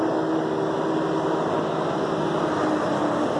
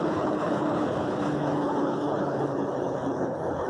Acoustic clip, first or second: first